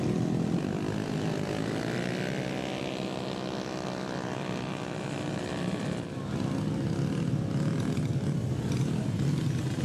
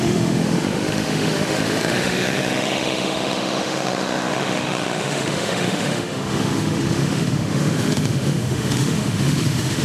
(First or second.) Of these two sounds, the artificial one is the second